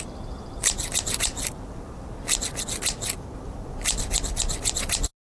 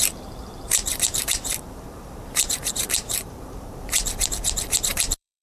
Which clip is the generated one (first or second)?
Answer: second